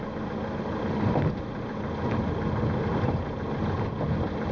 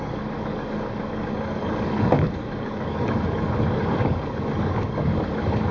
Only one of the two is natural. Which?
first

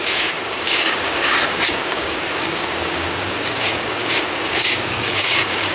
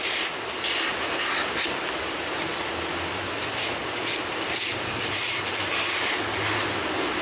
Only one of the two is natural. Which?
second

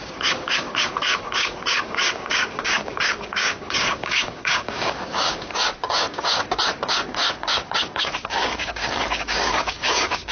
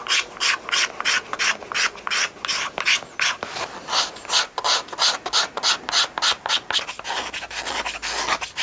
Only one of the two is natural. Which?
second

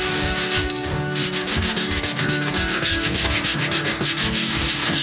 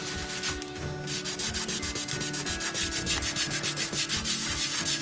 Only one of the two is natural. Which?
second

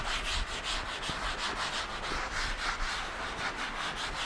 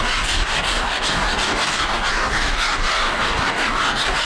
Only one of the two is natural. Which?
first